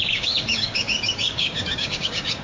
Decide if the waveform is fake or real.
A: fake